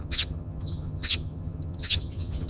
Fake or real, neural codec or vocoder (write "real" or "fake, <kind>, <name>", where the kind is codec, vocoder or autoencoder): fake, vocoder, HiFi-GAN